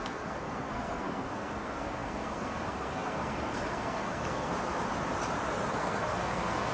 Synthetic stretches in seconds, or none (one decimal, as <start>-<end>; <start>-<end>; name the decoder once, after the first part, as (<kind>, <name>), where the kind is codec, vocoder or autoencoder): 0.0-4.5 (codec, SNAC); 5.7-6.7